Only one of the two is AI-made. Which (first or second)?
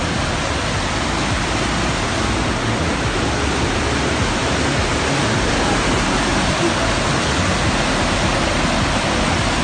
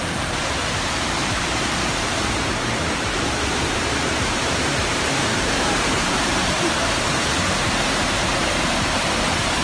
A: second